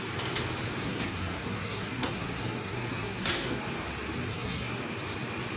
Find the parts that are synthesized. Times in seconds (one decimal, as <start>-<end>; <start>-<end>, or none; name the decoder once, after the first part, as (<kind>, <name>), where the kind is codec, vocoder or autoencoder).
0.8-3.6 (codec, SNAC); 4.3-4.8